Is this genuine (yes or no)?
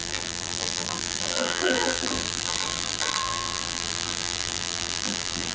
no